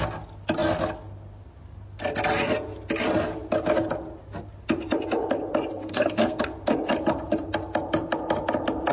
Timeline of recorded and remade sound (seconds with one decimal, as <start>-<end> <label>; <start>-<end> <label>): 0.0-5.7 recorded; 5.7-6.4 remade; 6.4-8.9 recorded